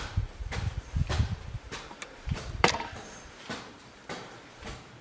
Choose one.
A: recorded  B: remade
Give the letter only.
B